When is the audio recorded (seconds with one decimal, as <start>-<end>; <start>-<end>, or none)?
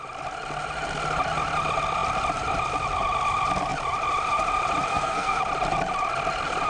0.0-4.9; 5.4-6.7